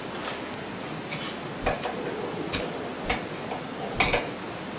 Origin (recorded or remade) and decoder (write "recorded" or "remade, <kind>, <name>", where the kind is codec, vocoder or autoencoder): recorded